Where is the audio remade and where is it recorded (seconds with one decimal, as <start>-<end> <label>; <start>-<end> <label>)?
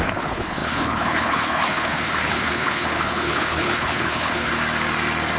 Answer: 0.0-4.5 remade; 4.5-5.4 recorded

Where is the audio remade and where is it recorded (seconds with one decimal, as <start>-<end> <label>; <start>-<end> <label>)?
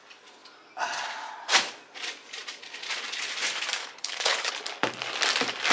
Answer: 0.0-3.8 recorded; 3.8-4.5 remade; 4.5-5.7 recorded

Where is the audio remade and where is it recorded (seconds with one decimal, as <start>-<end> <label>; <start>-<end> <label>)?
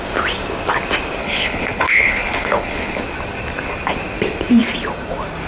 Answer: 0.0-1.2 recorded; 1.2-3.0 remade; 3.0-5.5 recorded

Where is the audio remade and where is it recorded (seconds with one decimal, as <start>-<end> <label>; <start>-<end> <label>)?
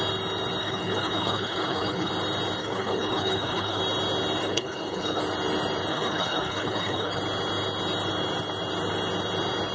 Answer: 0.0-0.6 recorded; 0.6-2.1 remade; 2.1-2.6 recorded; 2.6-3.8 remade; 3.8-4.4 recorded; 4.4-5.2 remade; 5.2-5.9 recorded; 5.9-7.2 remade; 7.2-9.7 recorded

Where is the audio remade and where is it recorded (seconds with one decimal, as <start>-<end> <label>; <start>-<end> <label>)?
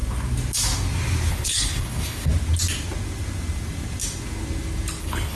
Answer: 0.0-1.3 recorded; 1.3-2.3 remade; 2.3-5.0 recorded; 5.0-5.4 remade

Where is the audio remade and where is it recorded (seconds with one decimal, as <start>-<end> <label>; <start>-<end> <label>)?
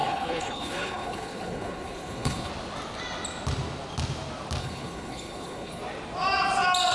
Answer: 0.0-2.5 remade; 2.5-4.6 recorded; 4.6-5.8 remade; 5.8-6.9 recorded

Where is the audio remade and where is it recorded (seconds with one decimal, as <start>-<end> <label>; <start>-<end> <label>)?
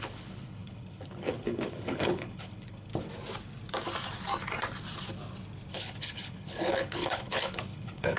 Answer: 0.0-2.9 remade; 2.9-5.7 recorded; 5.7-8.2 remade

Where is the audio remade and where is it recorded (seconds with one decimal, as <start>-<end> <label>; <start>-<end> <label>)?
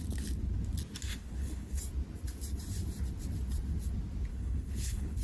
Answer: 0.0-1.1 recorded; 1.1-1.8 remade; 1.8-4.3 recorded; 4.3-5.2 remade